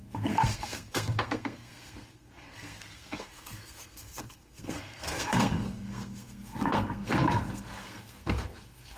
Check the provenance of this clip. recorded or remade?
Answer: remade